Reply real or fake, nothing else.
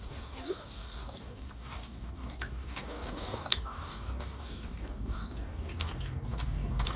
fake